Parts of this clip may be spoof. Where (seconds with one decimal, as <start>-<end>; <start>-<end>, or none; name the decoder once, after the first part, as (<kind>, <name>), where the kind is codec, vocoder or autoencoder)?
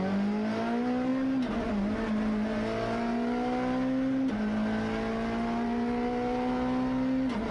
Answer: none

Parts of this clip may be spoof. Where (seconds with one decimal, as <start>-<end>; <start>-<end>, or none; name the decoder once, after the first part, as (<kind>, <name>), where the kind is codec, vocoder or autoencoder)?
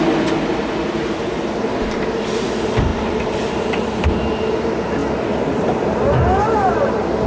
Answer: 2.9-4.5 (vocoder, BigVGAN v2)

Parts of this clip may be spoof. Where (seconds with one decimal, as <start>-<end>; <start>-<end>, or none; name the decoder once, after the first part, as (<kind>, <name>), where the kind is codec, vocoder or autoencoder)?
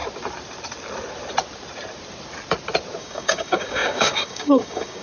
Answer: 3.0-5.0 (codec, DAC)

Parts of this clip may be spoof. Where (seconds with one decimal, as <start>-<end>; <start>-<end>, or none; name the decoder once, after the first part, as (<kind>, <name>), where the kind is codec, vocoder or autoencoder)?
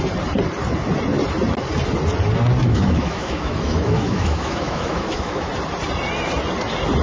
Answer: 2.6-5.5 (autoencoder, DAC-VAE)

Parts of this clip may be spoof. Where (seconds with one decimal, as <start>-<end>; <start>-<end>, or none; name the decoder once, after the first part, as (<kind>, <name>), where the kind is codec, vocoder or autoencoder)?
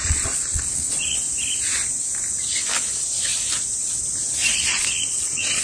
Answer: 0.0-1.2 (vocoder, Vocos); 4.5-5.6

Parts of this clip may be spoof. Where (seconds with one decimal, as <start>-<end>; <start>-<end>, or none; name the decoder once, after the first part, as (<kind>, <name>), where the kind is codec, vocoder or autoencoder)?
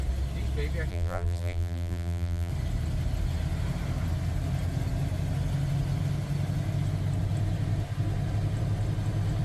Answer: 0.9-2.5 (vocoder, BigVGAN v2)